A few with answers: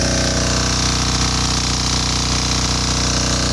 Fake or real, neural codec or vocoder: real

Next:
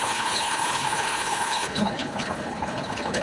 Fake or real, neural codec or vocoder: fake, codec, HILCodec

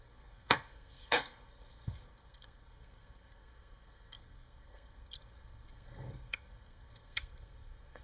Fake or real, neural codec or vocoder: fake, codec, SNAC